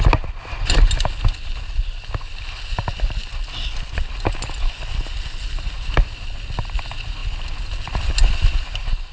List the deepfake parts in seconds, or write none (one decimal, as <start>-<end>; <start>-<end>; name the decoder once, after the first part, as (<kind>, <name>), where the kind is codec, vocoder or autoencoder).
none

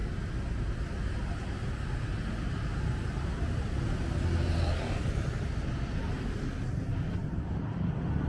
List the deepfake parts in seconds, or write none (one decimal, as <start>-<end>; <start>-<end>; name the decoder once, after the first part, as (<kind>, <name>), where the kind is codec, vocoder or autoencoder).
none

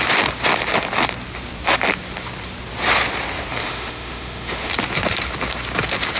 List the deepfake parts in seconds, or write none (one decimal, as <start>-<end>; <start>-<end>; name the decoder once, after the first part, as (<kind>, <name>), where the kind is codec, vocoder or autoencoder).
3.6-4.7 (autoencoder, DAC-VAE)

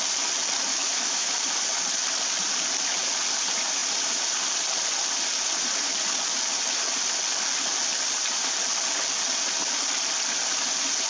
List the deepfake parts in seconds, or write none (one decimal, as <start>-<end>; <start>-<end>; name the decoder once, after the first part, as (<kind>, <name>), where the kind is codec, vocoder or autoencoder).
0.7-1.3 (autoencoder, DAC-VAE)

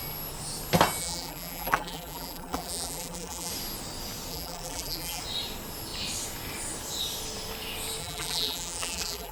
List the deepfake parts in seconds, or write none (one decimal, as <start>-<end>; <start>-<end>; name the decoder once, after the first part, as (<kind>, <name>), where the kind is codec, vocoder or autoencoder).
1.0-3.5 (vocoder, BigVGAN v2); 4.3-5.2; 8.0-9.3